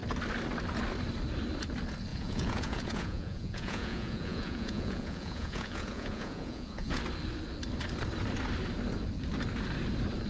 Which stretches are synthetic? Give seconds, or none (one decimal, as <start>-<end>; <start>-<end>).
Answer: 2.1-7.0